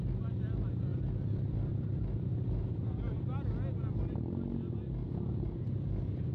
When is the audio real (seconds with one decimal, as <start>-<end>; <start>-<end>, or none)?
0.0-6.3